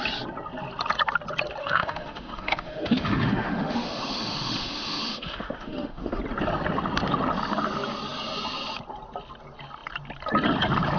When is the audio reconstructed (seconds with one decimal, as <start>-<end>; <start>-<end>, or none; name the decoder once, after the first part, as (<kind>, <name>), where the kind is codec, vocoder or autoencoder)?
1.6-6.2 (autoencoder, DAC-VAE)